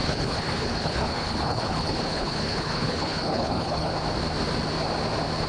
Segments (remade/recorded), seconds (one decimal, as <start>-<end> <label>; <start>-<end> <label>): 0.0-3.9 remade; 3.9-5.5 recorded